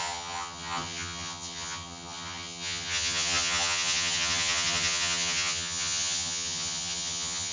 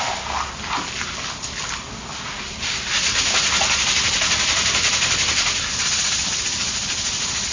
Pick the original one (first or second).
second